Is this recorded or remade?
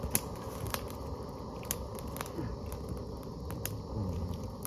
recorded